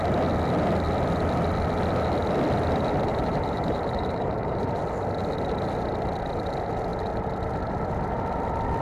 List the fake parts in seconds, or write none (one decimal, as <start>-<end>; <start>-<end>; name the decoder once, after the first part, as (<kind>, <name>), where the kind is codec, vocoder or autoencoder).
3.1-4.8 (vocoder, BigVGAN v2)